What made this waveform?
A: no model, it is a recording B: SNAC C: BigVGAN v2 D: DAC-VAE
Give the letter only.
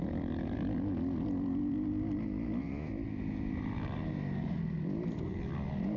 A